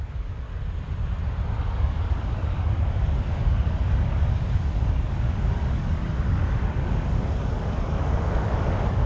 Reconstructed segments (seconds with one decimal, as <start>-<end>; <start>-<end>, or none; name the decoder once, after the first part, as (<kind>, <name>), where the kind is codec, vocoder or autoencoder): 0.0-0.5 (codec, DAC); 1.6-9.1

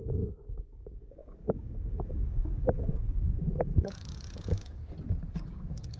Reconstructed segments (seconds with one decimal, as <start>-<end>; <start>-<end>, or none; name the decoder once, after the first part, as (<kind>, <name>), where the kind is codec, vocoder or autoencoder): 0.0-4.8 (codec, DAC); 5.3-6.0